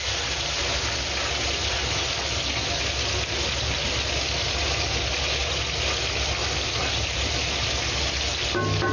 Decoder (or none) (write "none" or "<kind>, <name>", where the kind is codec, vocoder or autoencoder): none